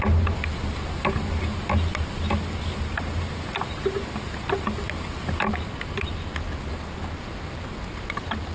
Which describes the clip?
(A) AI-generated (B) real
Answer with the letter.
B